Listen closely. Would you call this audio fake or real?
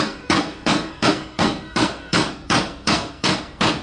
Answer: fake